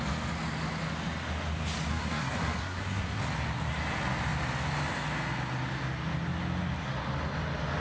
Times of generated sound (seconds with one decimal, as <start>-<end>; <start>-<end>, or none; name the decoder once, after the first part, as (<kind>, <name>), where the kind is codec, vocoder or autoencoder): 1.9-3.2 (codec, SNAC)